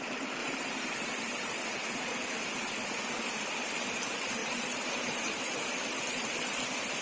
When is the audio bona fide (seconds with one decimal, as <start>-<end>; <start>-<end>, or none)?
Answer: 0.0-0.4; 1.6-4.4; 5.4-7.0